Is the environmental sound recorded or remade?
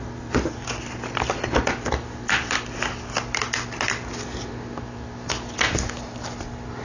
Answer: recorded